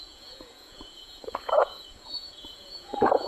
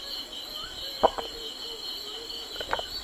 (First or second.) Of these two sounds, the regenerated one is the first